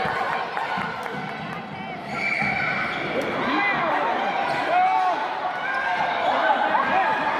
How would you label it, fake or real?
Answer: real